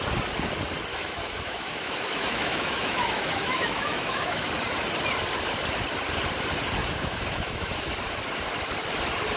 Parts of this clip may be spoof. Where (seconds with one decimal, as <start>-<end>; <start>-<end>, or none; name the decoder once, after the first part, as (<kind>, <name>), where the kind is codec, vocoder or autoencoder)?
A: 0.9-4.5 (autoencoder, DAC-VAE); 6.8-7.9